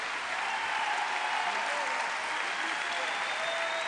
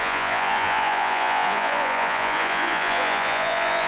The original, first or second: first